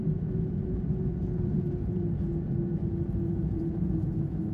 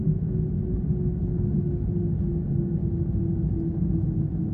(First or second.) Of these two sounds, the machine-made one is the first